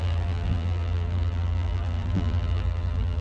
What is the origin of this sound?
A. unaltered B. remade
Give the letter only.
B